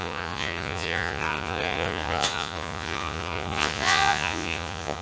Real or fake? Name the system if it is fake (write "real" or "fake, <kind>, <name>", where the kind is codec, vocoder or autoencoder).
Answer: fake, vocoder, Vocos